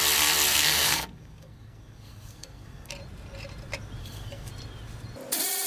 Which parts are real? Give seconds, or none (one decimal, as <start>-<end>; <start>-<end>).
0.0-0.5; 2.9-4.0; 4.5-5.7